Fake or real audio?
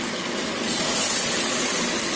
real